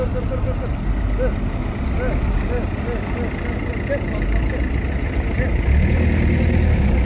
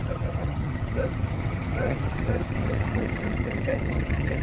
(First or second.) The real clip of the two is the first